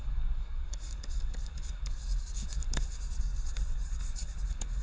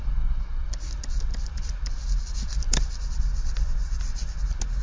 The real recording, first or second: second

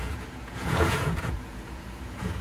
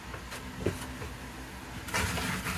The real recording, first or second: second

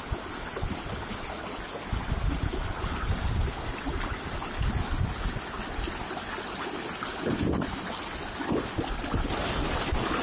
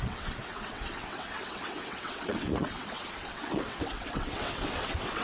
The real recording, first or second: first